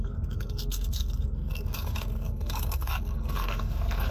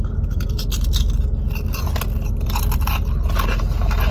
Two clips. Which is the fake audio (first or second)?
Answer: first